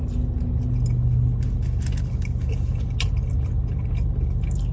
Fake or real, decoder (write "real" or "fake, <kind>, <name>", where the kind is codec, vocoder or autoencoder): real